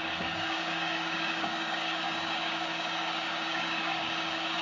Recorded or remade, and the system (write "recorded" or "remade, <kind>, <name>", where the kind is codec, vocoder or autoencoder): remade, codec, DAC